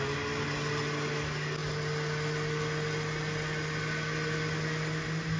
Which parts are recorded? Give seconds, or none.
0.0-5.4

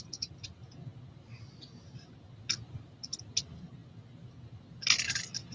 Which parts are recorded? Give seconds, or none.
0.0-5.5